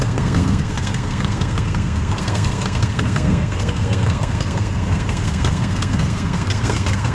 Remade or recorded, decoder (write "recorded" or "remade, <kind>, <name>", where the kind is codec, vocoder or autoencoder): remade, codec, SNAC